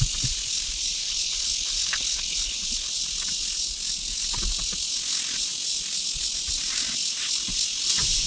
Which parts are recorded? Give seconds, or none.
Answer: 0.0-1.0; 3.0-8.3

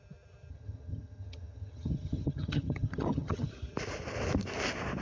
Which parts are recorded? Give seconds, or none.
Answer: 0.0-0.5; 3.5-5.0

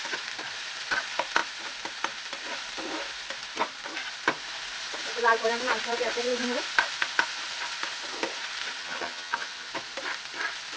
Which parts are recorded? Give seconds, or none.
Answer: 0.0-8.8; 9.7-10.8

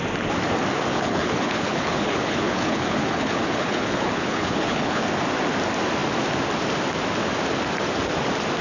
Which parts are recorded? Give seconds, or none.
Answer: 0.0-0.9; 5.0-8.6